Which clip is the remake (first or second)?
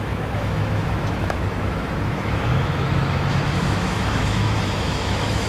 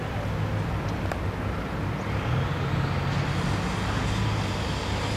first